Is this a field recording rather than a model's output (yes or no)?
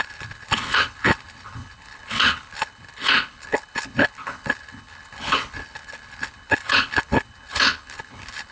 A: no